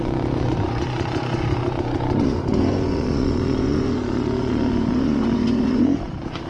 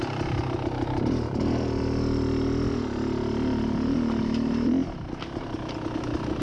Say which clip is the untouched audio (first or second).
second